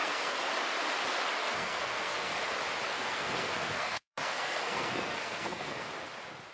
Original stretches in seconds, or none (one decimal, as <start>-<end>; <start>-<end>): 0.5-1.4; 2.3-2.9; 5.9-6.5